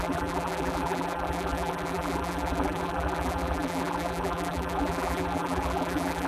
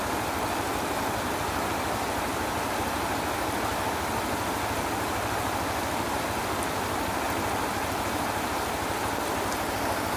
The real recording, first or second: second